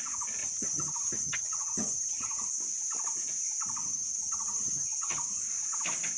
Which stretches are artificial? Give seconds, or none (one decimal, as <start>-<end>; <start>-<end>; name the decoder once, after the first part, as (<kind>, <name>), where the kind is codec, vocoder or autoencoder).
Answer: 0.4-2.5 (vocoder, HiFi-GAN); 3.8-5.4